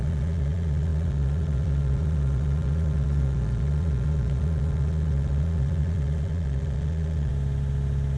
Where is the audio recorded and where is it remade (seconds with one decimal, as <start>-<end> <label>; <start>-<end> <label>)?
0.0-7.3 remade; 7.3-8.2 recorded

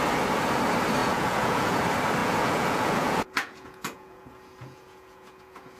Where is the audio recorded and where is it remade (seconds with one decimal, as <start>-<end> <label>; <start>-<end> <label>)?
0.0-1.0 recorded; 1.0-1.8 remade; 1.8-2.2 recorded; 2.2-5.8 remade

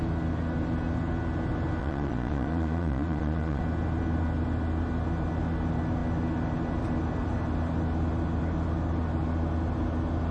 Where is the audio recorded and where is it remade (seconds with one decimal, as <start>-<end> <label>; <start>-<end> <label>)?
0.0-1.8 recorded; 1.8-3.6 remade; 3.6-10.3 recorded